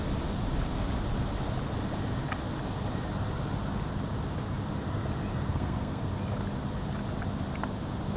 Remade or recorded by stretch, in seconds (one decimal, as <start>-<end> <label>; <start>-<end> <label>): 0.0-5.3 recorded; 5.3-6.1 remade; 6.1-8.2 recorded